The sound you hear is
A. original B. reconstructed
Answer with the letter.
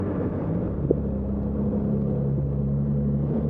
A